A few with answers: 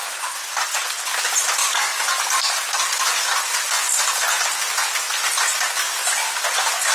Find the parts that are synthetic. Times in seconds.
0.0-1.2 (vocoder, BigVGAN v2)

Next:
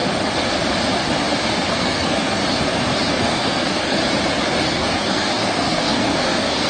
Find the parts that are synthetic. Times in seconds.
1.7-2.4 (codec, SNAC); 3.2-4.0; 4.7-6.7

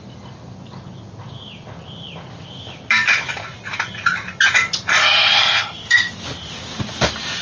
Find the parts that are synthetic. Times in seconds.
5.0-6.1 (codec, SNAC)